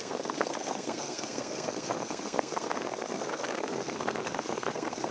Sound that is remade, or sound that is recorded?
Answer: remade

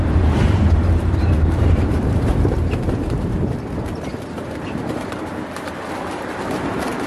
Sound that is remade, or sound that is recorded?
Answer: remade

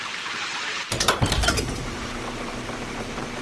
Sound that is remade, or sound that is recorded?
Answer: remade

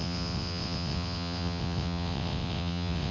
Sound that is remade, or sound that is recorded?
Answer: remade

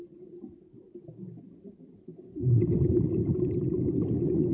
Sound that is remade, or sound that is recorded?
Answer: recorded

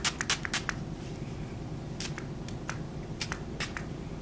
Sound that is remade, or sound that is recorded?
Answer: recorded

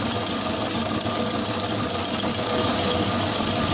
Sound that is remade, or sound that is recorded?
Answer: recorded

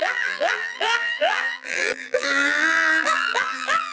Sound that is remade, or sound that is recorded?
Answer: remade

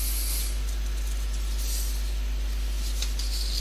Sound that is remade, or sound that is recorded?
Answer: recorded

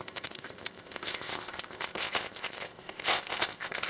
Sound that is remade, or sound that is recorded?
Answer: remade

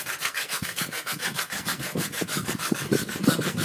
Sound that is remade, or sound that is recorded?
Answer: remade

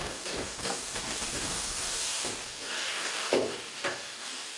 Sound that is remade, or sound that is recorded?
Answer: remade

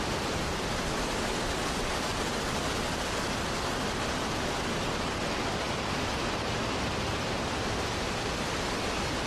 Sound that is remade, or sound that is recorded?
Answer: recorded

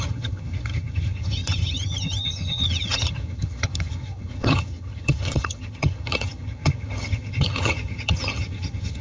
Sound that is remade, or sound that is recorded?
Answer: remade